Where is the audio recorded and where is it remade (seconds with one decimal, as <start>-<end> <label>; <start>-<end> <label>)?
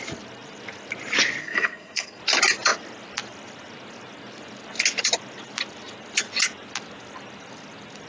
0.0-1.4 recorded; 1.4-2.2 remade; 2.2-8.1 recorded